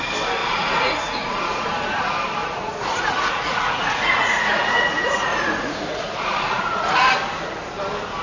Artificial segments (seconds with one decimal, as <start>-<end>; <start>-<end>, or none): 0.4-1.7; 2.4-7.1